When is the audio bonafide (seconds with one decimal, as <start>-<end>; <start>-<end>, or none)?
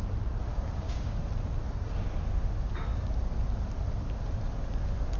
0.0-0.5; 1.2-5.2